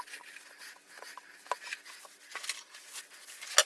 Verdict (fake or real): real